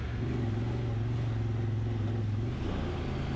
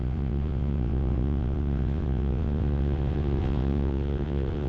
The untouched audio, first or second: first